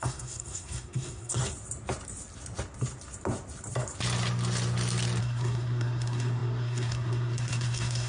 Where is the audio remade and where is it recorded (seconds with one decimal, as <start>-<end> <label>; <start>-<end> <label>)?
0.0-1.4 remade; 1.4-5.2 recorded; 5.2-8.1 remade